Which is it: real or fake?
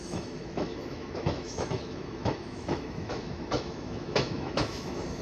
fake